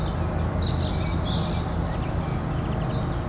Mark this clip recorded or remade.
recorded